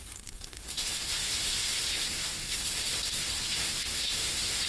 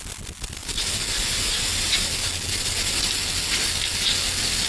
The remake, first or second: first